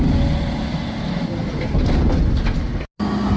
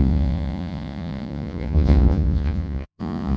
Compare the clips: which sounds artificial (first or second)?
second